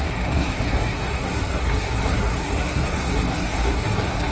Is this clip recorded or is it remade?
remade